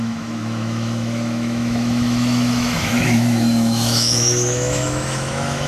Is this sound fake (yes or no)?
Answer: yes